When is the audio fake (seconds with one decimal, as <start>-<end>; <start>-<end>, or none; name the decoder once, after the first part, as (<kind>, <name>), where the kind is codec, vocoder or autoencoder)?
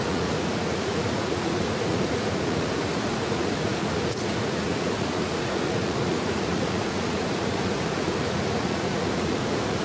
0.0-9.8 (vocoder, Vocos)